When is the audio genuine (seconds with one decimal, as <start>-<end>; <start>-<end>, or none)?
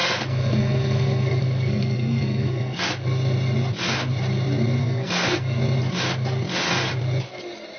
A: 2.9-4.8; 5.6-7.8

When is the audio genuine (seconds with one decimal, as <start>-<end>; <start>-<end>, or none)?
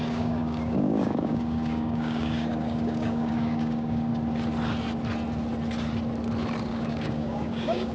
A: 4.1-6.7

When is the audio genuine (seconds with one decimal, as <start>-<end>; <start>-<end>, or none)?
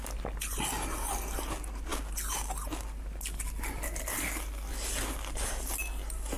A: 0.0-6.4